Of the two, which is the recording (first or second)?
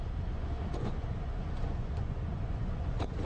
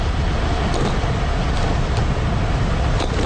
second